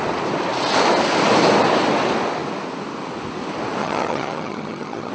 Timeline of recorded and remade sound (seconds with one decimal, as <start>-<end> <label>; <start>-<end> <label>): 0.0-3.8 recorded; 3.8-5.1 remade